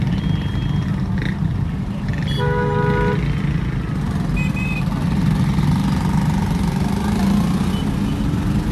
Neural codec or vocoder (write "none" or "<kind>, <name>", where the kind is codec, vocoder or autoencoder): none